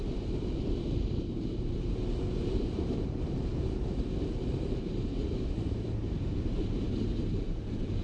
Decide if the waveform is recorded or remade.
remade